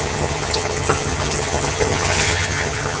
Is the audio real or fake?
fake